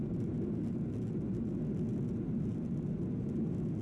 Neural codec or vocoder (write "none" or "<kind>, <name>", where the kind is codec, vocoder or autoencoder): none